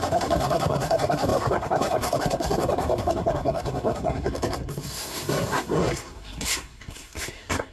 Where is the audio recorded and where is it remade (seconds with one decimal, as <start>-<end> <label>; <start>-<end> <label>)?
0.0-7.7 remade